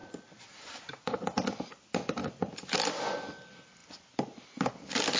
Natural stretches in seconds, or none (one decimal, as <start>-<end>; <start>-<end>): 1.7-2.2; 3.3-5.2